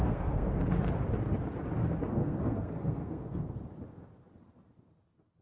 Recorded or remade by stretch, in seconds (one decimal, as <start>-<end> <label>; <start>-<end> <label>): 0.0-0.5 remade; 0.5-2.2 recorded; 2.2-3.4 remade; 3.4-5.4 recorded